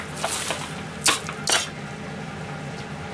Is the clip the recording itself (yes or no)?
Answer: yes